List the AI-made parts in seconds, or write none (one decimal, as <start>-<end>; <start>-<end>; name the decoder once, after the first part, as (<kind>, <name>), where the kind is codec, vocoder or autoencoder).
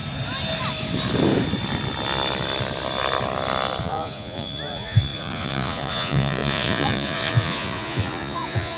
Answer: 3.8-8.8 (vocoder, Vocos)